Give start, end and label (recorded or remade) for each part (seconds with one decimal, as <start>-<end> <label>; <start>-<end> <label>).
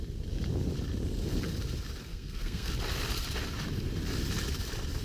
0.0-2.1 recorded; 2.1-2.7 remade; 2.7-5.0 recorded